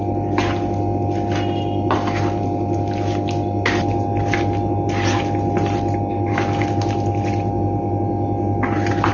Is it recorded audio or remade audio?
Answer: recorded